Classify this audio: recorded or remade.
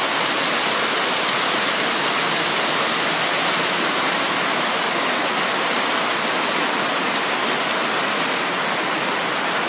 recorded